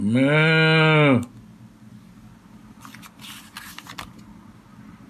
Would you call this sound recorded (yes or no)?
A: yes